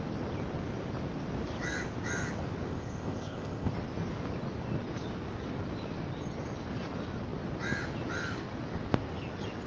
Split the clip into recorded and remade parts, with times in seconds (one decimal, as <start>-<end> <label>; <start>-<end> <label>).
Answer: 0.0-2.7 recorded; 2.7-3.7 remade; 3.7-9.7 recorded